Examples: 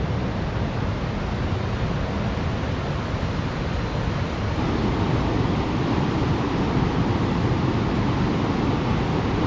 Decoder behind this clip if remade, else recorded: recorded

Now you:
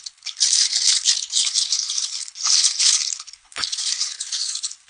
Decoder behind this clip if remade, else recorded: remade, codec, HILCodec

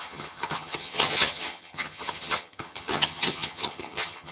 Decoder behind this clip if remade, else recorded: remade, vocoder, HiFi-GAN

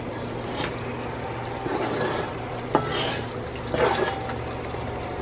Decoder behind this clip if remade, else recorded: recorded